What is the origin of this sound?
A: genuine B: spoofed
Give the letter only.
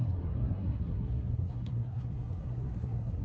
B